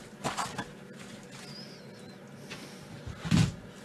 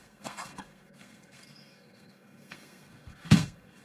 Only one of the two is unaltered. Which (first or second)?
first